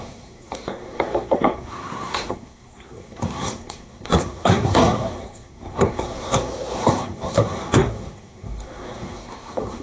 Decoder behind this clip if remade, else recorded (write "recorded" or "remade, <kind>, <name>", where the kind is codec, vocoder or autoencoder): remade, codec, SNAC